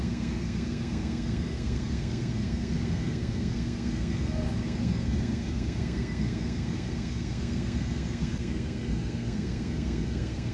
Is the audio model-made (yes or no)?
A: yes